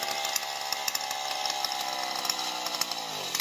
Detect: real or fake real